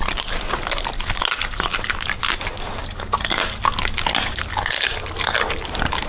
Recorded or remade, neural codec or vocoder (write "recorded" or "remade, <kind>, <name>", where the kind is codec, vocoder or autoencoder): recorded